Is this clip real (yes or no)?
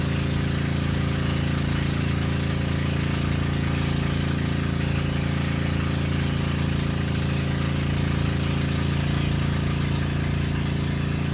yes